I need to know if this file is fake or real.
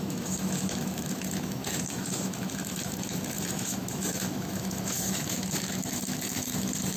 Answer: fake